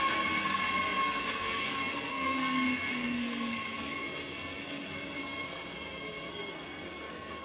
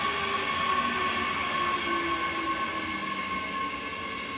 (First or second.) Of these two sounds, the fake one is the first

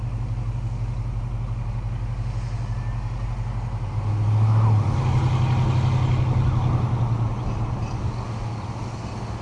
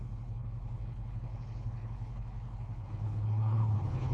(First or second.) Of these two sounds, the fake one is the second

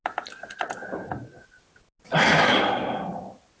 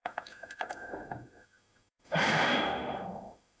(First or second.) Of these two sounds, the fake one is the second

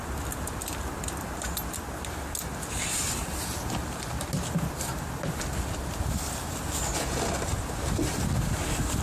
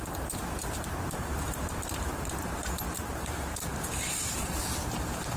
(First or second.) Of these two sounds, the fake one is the second